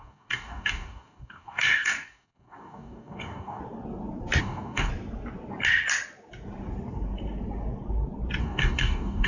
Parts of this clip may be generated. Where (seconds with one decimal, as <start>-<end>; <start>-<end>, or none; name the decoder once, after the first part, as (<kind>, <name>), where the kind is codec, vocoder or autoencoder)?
0.0-3.6 (codec, DAC); 4.4-4.9; 8.4-9.3